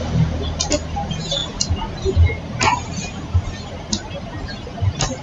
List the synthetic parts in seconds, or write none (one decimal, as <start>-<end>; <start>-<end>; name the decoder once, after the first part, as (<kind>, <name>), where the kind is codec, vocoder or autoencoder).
none